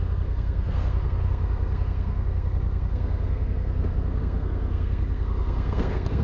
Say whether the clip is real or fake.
fake